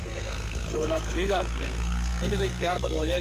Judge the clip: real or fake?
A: fake